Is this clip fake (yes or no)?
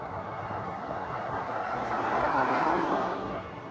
yes